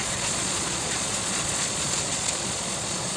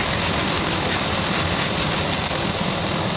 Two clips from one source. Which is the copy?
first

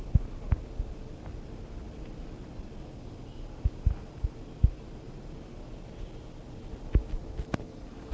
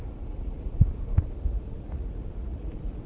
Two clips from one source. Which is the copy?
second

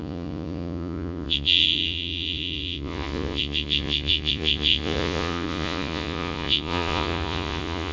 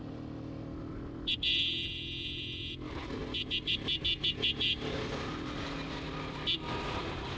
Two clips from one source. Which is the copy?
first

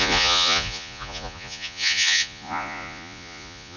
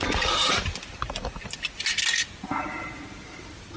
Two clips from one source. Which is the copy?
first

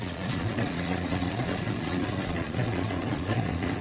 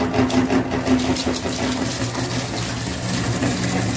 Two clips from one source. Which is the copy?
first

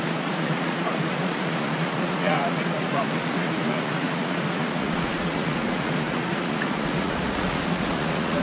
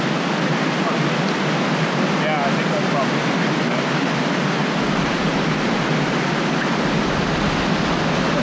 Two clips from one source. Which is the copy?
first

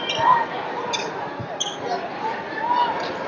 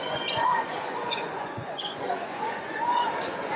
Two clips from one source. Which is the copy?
second